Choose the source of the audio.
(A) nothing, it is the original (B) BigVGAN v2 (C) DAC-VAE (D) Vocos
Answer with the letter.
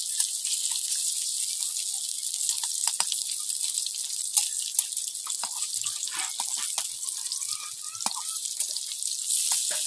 A